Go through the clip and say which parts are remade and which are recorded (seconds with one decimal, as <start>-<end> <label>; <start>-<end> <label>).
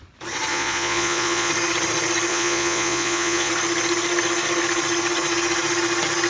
0.0-0.5 recorded; 0.5-1.5 remade; 1.5-2.3 recorded; 2.3-3.5 remade; 3.5-6.3 recorded